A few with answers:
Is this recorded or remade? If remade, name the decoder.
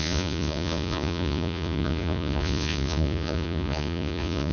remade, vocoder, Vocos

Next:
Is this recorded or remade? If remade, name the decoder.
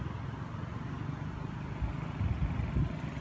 recorded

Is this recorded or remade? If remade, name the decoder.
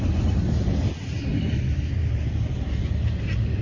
recorded